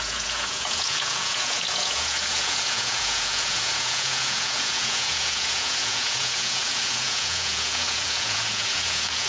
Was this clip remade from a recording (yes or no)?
yes